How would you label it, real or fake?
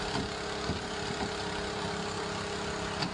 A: real